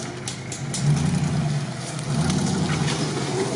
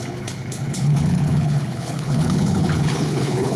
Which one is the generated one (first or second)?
second